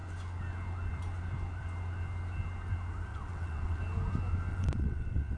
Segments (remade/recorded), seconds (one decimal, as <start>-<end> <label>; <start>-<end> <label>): 0.0-3.1 recorded; 3.1-3.8 remade; 3.8-4.5 recorded; 4.5-5.4 remade